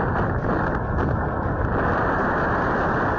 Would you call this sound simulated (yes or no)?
no